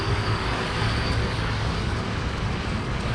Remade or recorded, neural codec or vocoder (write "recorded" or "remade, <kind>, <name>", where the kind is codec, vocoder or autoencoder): remade, codec, DAC